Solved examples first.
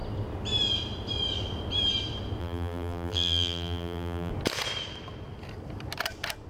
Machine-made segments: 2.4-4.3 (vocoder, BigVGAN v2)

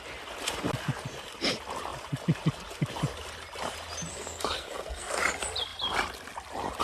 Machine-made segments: 4.1-5.2 (codec, SNAC)

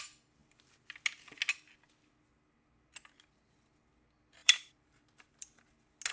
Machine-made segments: 4.4-5.6 (vocoder, BigVGAN v2)

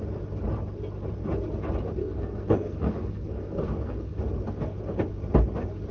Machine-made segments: 2.0-4.2 (codec, SNAC)